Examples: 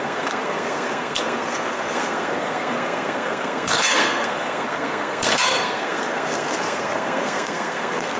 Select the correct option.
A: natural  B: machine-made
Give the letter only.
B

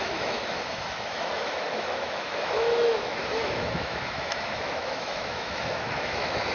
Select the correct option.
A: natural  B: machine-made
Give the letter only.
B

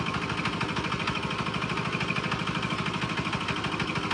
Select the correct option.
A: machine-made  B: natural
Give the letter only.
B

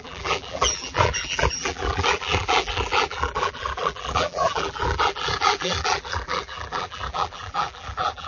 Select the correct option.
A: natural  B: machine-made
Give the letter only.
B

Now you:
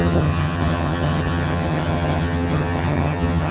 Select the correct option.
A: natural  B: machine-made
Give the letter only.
B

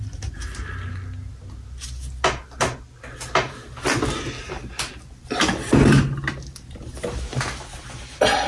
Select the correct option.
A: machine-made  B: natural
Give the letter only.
B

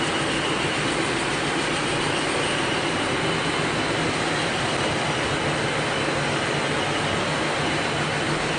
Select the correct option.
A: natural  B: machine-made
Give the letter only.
A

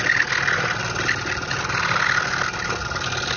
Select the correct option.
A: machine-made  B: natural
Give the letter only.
B